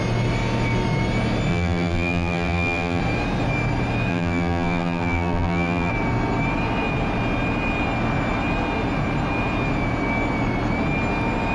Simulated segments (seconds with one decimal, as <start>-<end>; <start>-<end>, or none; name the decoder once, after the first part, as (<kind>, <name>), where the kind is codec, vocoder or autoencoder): 1.5-3.0 (vocoder, BigVGAN v2); 4.1-5.9